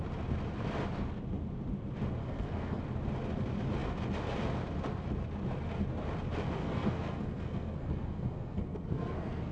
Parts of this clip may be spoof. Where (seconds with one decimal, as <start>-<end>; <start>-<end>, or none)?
2.2-2.8; 6.6-9.5